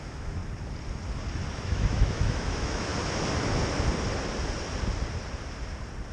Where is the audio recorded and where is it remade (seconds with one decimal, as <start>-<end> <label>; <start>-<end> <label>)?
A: 0.0-0.4 remade; 0.4-1.5 recorded; 1.5-2.9 remade; 2.9-6.1 recorded